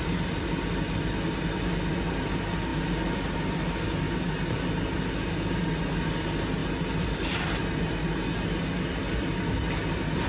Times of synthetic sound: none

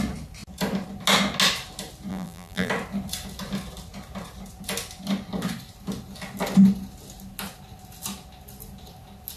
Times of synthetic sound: 2.1-2.7 (vocoder, BigVGAN v2)

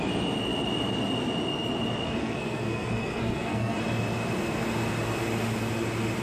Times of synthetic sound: 2.2-3.8 (codec, SNAC)

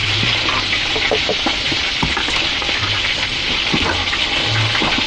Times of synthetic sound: 0.0-3.1 (vocoder, BigVGAN v2)

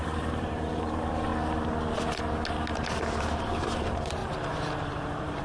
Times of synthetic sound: 0.0-1.3 (vocoder, BigVGAN v2); 3.4-4.2; 4.8-5.4